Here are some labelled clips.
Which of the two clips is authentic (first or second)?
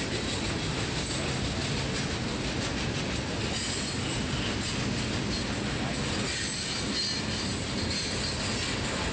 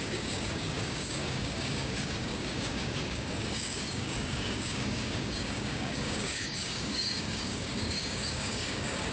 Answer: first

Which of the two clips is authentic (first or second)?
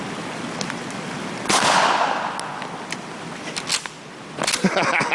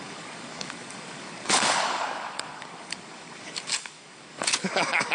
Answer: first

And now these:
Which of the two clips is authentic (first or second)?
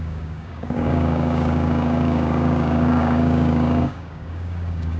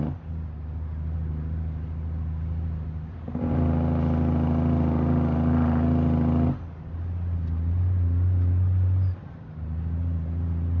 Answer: second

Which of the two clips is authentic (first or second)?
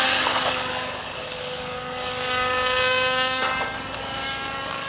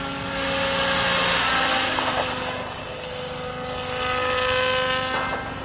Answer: second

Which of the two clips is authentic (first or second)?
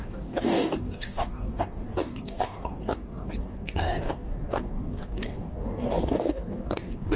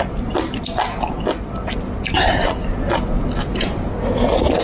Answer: second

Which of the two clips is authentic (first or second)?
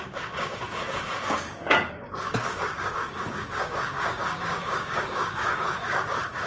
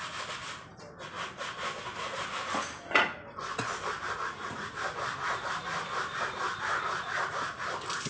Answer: second